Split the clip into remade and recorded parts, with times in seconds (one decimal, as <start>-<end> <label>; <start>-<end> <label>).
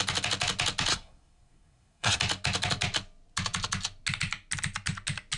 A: 0.0-0.9 recorded; 0.9-2.2 remade; 2.2-5.4 recorded